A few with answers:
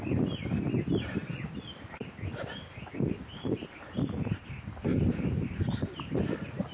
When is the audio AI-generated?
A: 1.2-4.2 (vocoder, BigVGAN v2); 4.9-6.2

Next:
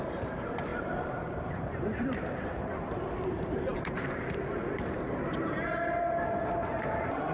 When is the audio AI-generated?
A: 0.0-7.3 (vocoder, BigVGAN v2)

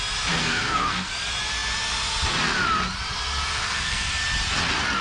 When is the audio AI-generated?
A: 0.4-1.1 (codec, SNAC); 3.5-4.1

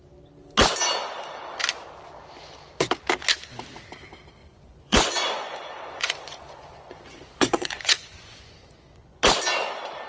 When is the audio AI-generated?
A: 4.4-9.2 (vocoder, Vocos)

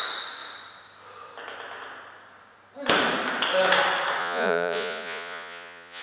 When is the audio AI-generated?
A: 4.2-6.0 (vocoder, Vocos)